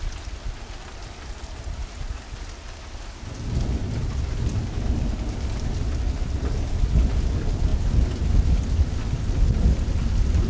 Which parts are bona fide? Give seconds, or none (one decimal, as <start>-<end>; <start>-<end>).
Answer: 0.0-0.9; 2.3-3.8; 7.2-10.5